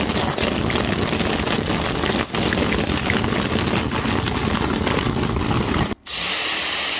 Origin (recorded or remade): recorded